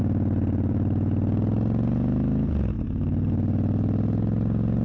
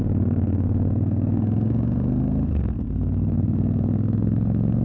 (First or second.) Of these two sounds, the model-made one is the second